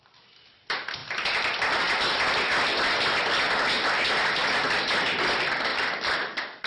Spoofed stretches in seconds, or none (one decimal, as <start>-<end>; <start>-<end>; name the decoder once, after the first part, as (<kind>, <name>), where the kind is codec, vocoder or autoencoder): none